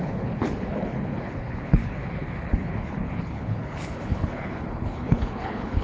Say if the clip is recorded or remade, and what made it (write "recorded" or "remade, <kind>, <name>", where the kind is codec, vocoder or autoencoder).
remade, codec, HILCodec